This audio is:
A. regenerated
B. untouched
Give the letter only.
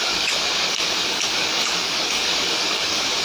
A